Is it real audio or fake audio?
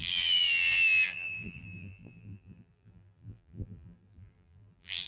fake